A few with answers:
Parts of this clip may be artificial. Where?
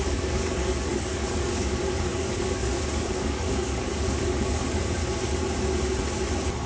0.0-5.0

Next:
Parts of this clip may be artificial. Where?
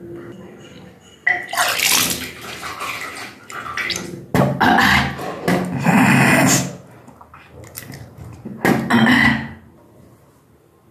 none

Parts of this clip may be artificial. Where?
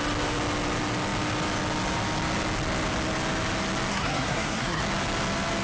3.9-4.8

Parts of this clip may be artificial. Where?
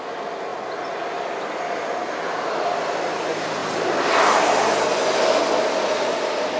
none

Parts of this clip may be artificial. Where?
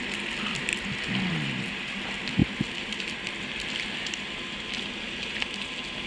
none